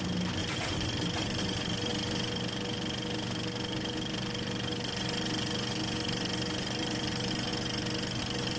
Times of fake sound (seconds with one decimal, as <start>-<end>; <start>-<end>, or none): 0.0-1.9; 6.8-7.5; 8.2-8.6